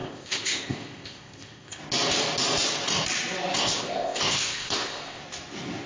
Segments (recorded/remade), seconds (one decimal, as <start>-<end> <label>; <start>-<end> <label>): 0.0-1.8 remade; 1.8-3.6 recorded; 3.6-5.2 remade; 5.2-5.9 recorded